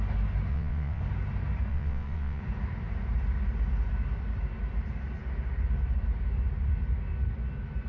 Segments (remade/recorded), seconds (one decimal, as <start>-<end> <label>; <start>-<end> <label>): 0.0-0.5 recorded; 0.5-1.0 remade; 1.0-1.7 recorded; 1.7-2.4 remade; 2.4-7.9 recorded